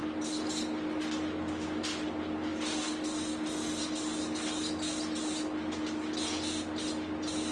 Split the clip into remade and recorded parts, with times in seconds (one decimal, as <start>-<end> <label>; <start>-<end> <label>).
0.0-7.5 recorded